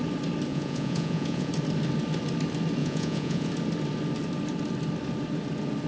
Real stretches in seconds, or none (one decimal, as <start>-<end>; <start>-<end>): 0.0-0.5; 1.5-2.8; 3.5-5.9